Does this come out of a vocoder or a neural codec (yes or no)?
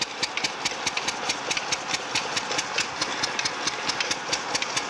no